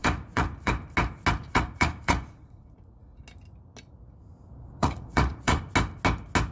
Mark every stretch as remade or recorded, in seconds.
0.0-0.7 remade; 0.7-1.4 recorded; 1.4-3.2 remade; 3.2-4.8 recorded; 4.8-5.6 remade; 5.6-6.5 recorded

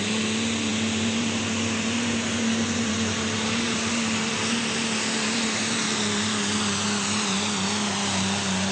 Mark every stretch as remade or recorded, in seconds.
0.0-0.7 recorded; 0.7-4.3 remade; 4.3-8.7 recorded